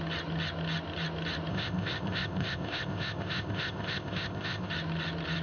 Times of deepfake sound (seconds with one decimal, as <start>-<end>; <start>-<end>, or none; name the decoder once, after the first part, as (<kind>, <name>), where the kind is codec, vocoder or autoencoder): 1.5-4.7 (codec, ZipCodec)